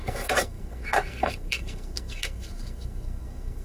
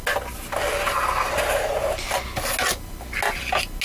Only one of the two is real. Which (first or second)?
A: second